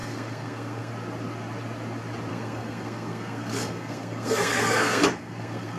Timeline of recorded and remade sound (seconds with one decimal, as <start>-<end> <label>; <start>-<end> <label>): 0.0-0.9 remade; 0.9-2.3 recorded; 2.3-5.8 remade